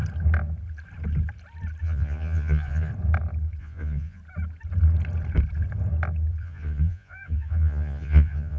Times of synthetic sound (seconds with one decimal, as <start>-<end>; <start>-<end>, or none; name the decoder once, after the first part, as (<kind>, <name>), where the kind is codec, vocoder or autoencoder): 1.8-2.9 (vocoder, Vocos); 3.6-4.2; 6.4-8.6